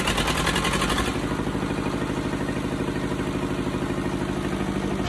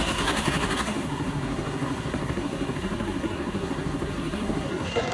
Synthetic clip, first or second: second